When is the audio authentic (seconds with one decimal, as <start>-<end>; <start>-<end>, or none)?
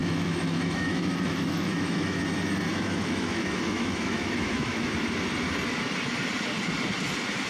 2.2-2.7; 4.9-7.5